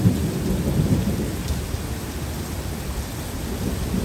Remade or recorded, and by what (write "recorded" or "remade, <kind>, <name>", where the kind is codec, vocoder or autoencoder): recorded